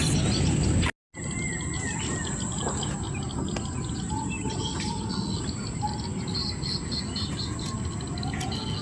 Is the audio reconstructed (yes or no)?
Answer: no